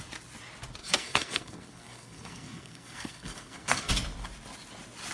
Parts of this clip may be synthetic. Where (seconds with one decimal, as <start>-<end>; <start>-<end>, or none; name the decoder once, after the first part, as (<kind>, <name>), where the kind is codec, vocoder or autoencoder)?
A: 0.8-3.9 (codec, SNAC)